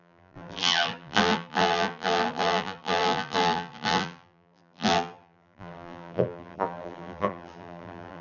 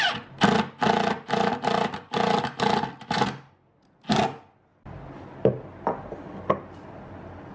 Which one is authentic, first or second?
second